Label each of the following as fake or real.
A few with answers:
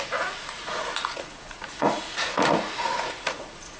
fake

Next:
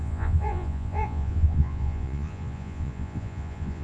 fake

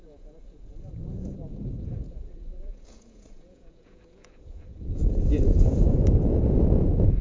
fake